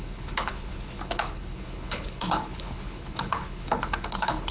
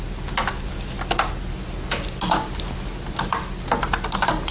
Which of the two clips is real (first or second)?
second